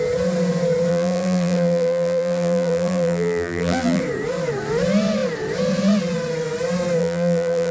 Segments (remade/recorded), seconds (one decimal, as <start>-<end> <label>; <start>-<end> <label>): 0.0-0.9 recorded; 0.9-4.0 remade; 4.0-7.0 recorded; 7.0-7.7 remade